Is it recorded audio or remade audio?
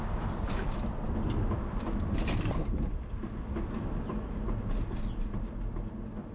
recorded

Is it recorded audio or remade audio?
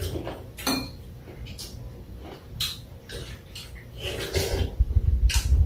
remade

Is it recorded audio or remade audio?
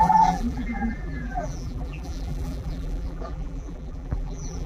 remade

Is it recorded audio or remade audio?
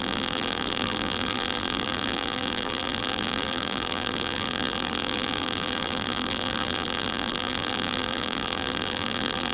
remade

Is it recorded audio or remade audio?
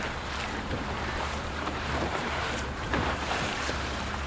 remade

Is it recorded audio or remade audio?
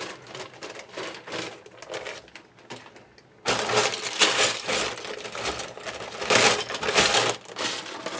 recorded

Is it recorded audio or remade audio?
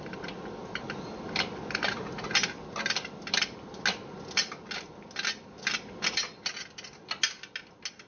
recorded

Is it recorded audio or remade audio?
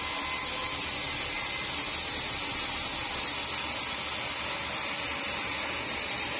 recorded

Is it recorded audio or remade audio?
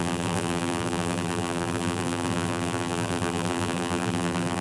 remade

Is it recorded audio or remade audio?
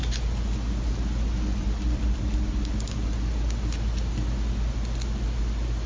recorded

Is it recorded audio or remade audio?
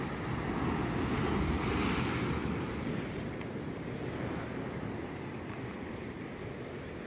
recorded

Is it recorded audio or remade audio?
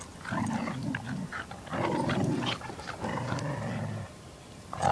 recorded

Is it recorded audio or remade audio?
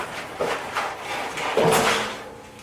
remade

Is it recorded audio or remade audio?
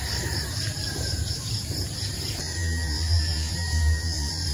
remade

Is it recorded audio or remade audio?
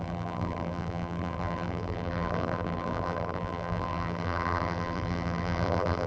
remade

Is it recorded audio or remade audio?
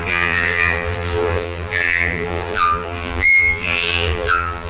remade